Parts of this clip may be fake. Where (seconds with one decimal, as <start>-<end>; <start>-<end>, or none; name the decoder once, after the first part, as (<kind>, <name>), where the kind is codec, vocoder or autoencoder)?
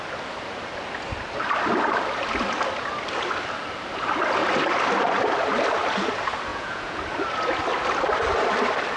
6.5-7.0 (vocoder, Vocos)